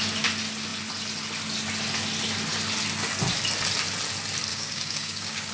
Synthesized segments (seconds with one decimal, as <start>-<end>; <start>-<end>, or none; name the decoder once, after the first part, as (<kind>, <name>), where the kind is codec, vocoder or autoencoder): 4.5-5.5 (codec, DAC)